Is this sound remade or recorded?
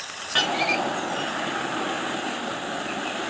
recorded